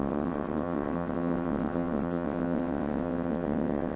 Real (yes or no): no